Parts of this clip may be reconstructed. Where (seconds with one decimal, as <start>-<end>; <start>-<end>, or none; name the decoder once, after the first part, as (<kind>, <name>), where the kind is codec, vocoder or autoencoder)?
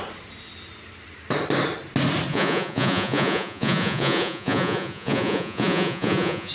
2.3-6.5 (vocoder, Vocos)